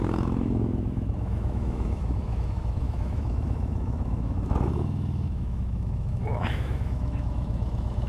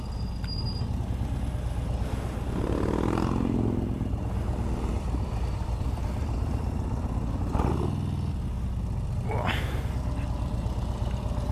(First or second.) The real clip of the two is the second